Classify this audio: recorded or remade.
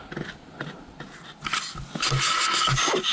recorded